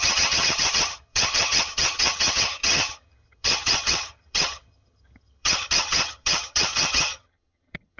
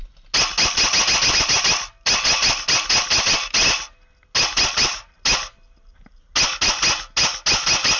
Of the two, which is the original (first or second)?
second